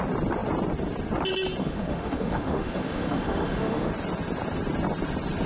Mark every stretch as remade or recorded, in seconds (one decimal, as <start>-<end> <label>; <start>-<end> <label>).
0.0-1.6 recorded; 1.6-3.9 remade; 3.9-5.5 recorded